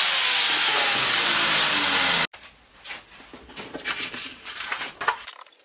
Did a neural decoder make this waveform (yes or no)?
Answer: no